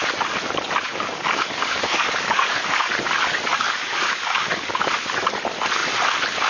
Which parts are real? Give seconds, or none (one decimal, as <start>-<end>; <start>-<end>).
0.0-0.9; 2.9-3.5; 4.9-6.5